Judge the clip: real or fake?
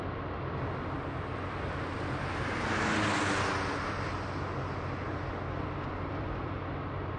real